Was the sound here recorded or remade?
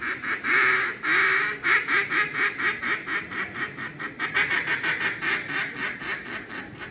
recorded